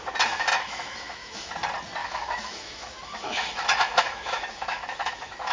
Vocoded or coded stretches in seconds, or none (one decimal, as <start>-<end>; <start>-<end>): 0.5-1.5; 2.0-5.5